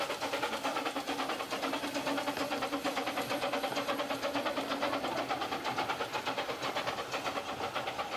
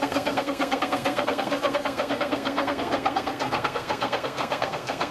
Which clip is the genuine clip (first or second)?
first